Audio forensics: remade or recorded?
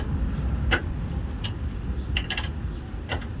recorded